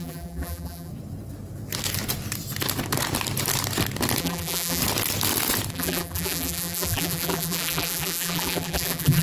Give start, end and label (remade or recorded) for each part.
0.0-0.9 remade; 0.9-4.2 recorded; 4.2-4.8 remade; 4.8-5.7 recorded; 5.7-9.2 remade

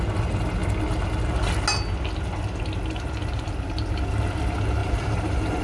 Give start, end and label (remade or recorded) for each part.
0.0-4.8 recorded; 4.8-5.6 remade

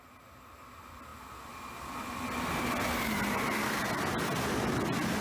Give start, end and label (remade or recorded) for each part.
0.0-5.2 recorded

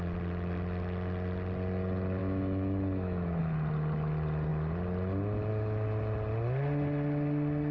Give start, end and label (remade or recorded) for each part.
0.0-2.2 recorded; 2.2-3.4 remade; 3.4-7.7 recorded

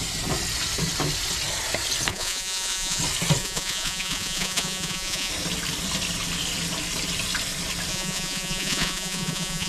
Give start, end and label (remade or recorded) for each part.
0.0-2.1 recorded; 2.1-3.0 remade; 3.0-3.4 recorded; 3.4-5.3 remade; 5.3-7.9 recorded; 7.9-9.7 remade

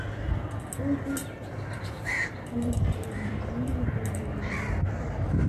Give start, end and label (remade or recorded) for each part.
0.0-1.2 recorded; 1.2-4.5 remade; 4.5-5.5 recorded